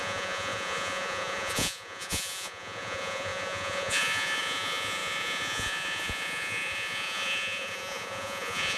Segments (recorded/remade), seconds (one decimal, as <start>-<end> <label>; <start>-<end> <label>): 0.0-8.8 remade